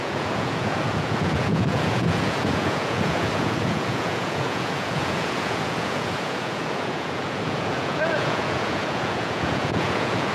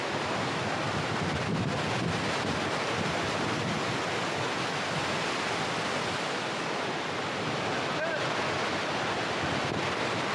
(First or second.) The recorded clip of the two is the second